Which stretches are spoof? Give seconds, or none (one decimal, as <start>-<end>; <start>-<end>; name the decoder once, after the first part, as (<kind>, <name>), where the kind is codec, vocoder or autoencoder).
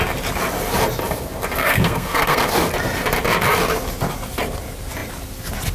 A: 1.6-2.5 (codec, SNAC)